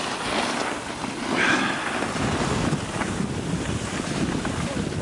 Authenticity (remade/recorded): recorded